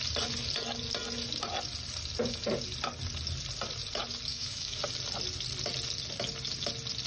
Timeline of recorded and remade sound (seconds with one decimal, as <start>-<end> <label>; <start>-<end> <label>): 0.0-4.3 recorded; 4.3-4.8 remade; 4.8-7.1 recorded